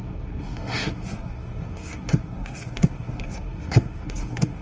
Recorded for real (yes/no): no